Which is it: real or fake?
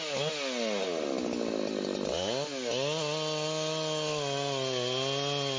real